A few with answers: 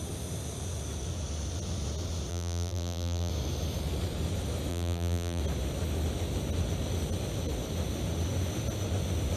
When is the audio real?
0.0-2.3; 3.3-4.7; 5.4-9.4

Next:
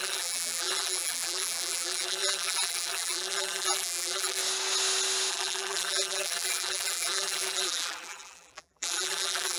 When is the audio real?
4.4-5.3

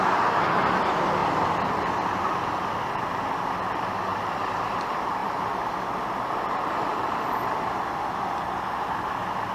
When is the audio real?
0.0-4.1; 4.6-5.2; 6.5-9.5

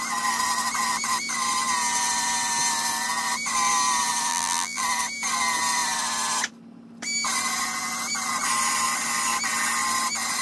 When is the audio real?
0.0-4.3; 4.8-10.4

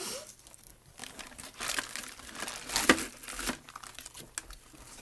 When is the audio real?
0.0-1.0; 1.8-5.0

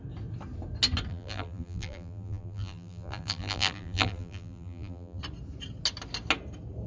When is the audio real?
0.0-1.1; 5.2-6.9